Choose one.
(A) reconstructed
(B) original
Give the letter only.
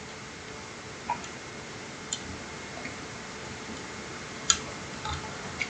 B